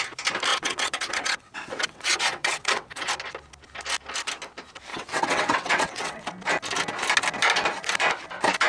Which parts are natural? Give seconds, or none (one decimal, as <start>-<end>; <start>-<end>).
0.0-0.5; 3.1-4.9; 6.2-8.7